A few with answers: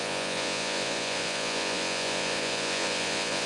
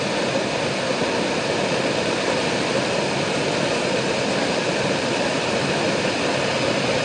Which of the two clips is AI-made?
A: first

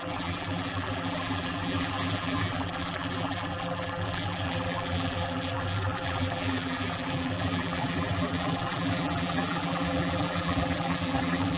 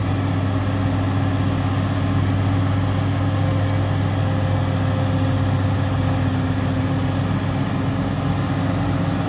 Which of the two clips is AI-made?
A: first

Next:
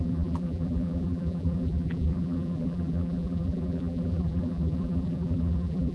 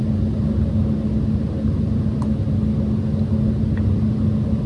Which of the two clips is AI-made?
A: first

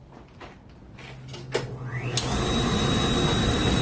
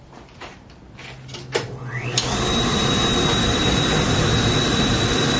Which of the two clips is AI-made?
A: second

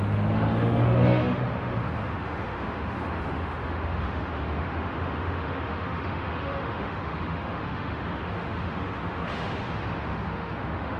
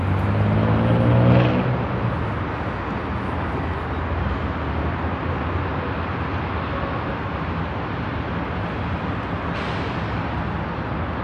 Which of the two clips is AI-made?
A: first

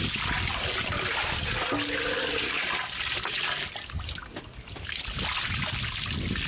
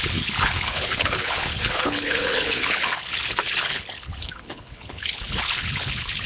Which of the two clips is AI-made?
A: second